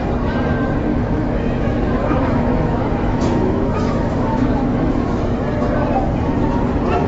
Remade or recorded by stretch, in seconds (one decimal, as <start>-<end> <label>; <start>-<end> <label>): 0.0-0.9 recorded; 0.9-5.2 remade; 5.2-7.1 recorded